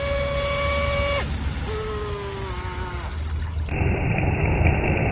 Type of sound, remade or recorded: recorded